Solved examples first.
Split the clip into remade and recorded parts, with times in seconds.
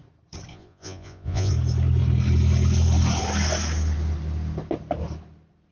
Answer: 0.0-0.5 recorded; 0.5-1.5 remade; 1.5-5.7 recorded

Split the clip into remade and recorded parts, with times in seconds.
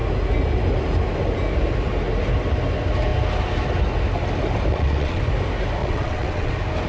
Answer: 0.0-4.7 recorded; 4.7-5.2 remade; 5.2-5.8 recorded; 5.8-6.5 remade; 6.5-6.9 recorded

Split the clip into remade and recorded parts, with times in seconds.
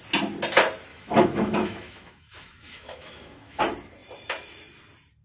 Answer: 0.0-0.9 recorded; 0.9-3.6 remade; 3.6-5.2 recorded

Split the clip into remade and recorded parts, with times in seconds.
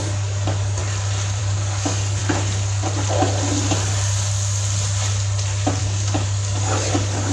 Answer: 0.0-0.8 remade; 0.8-1.4 recorded; 1.4-2.2 remade; 2.2-5.8 recorded; 5.8-7.3 remade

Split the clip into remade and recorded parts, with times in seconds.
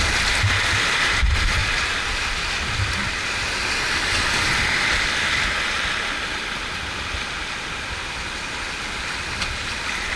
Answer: 0.0-10.2 recorded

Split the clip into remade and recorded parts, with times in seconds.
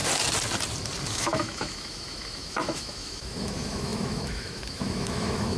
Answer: 0.0-1.1 recorded; 1.1-5.6 remade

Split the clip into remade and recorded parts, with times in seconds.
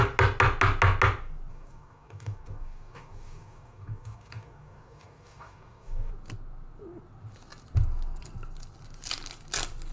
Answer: 0.0-1.5 recorded; 1.5-6.1 remade; 6.1-9.9 recorded